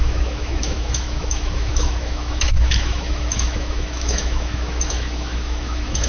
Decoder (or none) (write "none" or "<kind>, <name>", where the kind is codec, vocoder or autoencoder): autoencoder, DAC-VAE